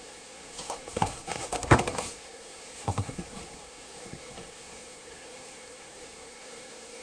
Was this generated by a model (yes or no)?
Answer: yes